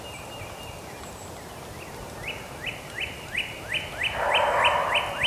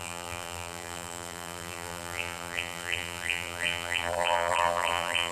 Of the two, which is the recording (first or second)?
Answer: first